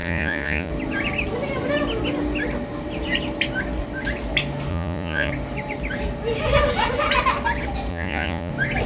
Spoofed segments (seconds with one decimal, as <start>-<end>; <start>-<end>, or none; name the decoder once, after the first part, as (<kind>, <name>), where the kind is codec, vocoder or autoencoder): 0.0-0.7 (vocoder, Vocos); 4.7-5.3; 7.9-8.5